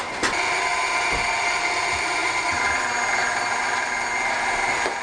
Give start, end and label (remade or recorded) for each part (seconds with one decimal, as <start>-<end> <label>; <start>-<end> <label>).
0.0-5.0 recorded